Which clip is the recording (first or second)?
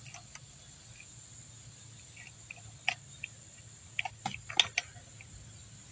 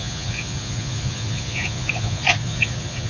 first